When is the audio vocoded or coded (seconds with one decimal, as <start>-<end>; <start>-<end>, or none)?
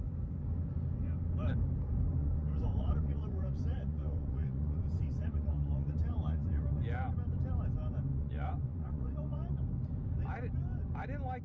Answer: 2.2-6.8; 8.1-9.6